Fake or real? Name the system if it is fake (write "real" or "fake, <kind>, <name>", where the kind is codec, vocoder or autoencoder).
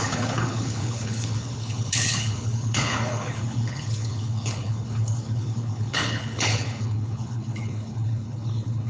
fake, codec, HILCodec